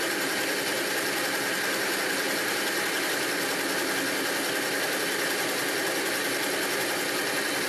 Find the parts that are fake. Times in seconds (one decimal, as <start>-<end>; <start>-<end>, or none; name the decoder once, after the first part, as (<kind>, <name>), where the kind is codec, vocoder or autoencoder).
none